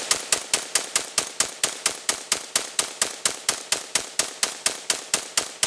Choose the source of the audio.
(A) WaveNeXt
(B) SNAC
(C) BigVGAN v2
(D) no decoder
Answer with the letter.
D